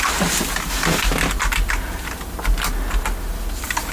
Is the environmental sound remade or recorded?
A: recorded